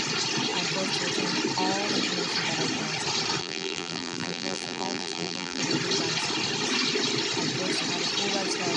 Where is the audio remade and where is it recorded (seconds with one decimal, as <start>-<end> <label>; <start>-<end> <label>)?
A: 0.0-3.4 recorded; 3.4-5.6 remade; 5.6-8.8 recorded